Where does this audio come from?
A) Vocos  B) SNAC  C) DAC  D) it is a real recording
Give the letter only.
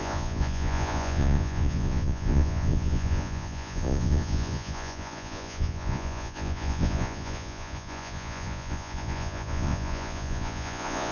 A